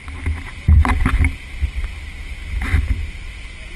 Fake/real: real